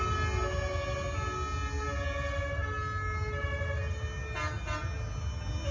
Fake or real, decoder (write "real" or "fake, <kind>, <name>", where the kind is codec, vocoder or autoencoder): real